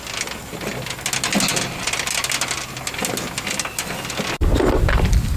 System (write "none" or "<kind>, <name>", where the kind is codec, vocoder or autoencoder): none